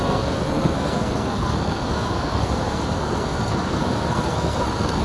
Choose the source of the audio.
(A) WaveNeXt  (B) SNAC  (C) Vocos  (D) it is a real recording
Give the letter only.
B